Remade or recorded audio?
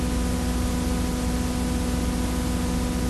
recorded